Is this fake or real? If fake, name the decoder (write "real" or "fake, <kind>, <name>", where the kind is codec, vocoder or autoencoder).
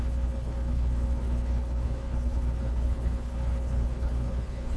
fake, codec, HILCodec